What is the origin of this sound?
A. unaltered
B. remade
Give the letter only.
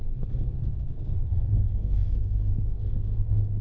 B